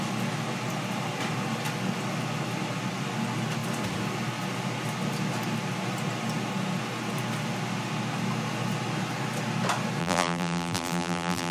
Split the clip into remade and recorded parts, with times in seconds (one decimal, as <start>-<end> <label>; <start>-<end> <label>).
0.0-10.0 recorded; 10.0-11.5 remade